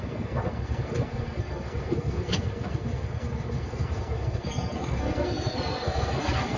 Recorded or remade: remade